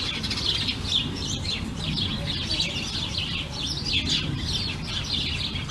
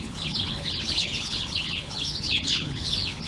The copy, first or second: second